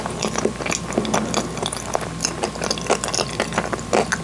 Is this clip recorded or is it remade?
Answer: recorded